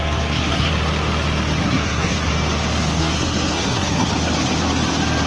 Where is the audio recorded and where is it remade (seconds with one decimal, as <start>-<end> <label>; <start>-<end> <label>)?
0.0-0.7 remade; 0.7-1.6 recorded; 1.6-2.3 remade; 2.3-3.0 recorded; 3.0-4.1 remade; 4.1-5.3 recorded

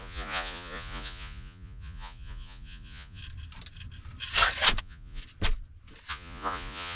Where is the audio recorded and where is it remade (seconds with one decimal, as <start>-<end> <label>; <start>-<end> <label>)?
0.0-3.2 remade; 3.2-4.8 recorded; 4.8-5.2 remade; 5.2-6.1 recorded; 6.1-7.0 remade

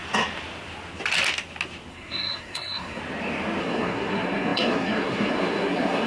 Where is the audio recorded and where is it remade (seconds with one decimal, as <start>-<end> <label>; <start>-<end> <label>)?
0.0-1.9 recorded; 1.9-3.0 remade; 3.0-3.6 recorded; 3.6-6.1 remade